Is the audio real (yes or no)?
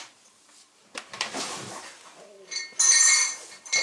yes